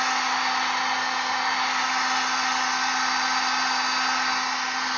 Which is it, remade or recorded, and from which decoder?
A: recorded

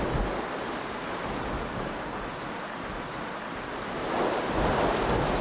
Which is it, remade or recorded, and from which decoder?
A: recorded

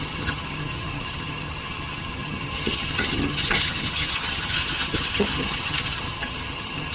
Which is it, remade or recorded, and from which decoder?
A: remade, vocoder, HiFi-GAN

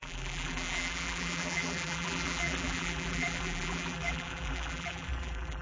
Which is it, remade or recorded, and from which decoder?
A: remade, vocoder, BigVGAN v2